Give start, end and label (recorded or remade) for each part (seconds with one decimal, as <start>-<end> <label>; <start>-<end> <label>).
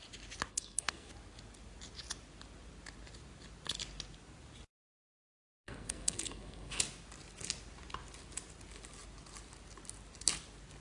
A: 0.0-0.5 recorded; 0.5-1.1 remade; 1.1-4.8 recorded; 4.8-6.8 remade; 6.8-10.8 recorded